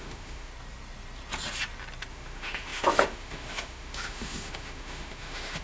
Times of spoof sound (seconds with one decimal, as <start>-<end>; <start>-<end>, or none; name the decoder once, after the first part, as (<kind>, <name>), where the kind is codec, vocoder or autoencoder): 0.0-0.5 (autoencoder, DAC-VAE); 2.1-5.6